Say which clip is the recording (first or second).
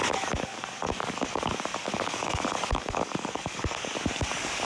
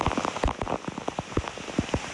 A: second